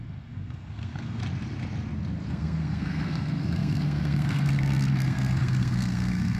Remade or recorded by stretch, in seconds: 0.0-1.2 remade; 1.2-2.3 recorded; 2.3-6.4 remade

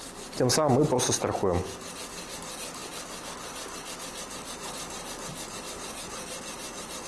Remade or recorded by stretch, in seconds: 0.0-7.1 recorded

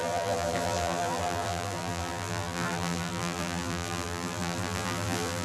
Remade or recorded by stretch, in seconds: 0.0-5.4 remade

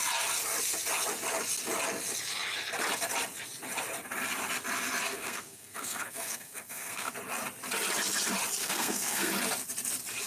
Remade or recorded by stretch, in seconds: 0.0-5.1 recorded; 5.1-7.1 remade; 7.1-8.6 recorded; 8.6-9.3 remade; 9.3-10.3 recorded

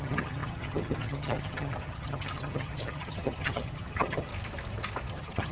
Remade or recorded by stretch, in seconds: 0.0-4.3 remade; 4.3-5.1 recorded; 5.1-5.5 remade

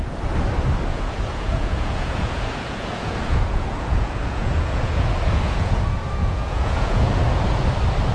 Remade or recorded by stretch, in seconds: 0.0-0.9 recorded; 0.9-5.8 remade; 5.8-6.2 recorded; 6.2-7.2 remade; 7.2-8.1 recorded